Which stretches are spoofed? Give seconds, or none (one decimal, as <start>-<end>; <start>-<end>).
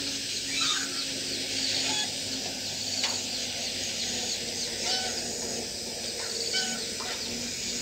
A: none